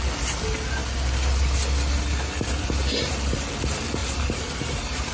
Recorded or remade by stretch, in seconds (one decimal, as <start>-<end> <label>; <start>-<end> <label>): 0.0-4.0 recorded; 4.0-5.1 remade